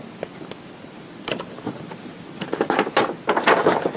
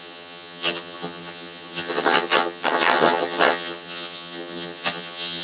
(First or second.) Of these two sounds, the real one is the first